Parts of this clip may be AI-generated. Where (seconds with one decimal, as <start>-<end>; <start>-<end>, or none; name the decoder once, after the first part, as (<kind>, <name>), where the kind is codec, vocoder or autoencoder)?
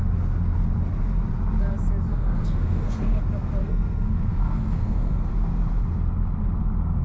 2.1-3.2 (codec, SNAC); 3.6-5.3